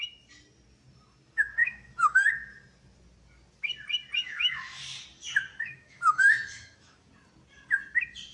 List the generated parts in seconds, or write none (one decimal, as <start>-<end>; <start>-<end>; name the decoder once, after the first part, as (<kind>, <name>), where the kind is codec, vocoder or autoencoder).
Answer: 1.6-2.3 (autoencoder, DAC-VAE); 4.2-4.8; 5.5-7.1